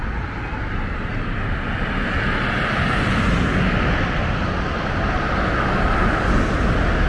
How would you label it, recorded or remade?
recorded